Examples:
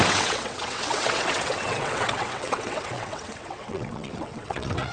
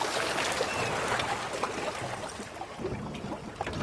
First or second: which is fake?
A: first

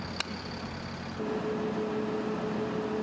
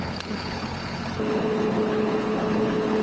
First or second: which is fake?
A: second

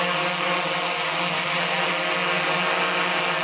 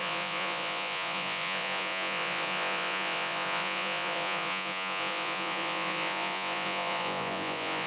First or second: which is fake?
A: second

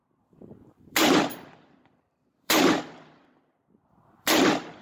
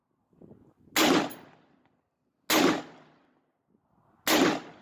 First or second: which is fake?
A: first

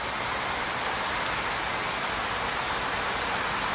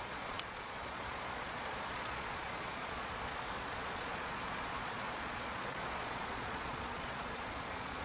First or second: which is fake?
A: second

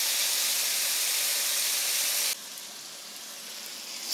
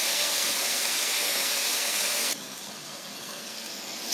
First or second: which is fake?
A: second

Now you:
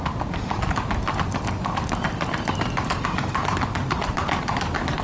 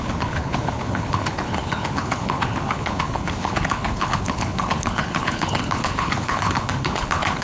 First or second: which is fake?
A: second